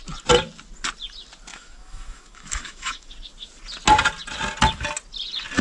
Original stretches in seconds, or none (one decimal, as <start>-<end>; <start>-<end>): 0.0-1.5; 3.1-5.6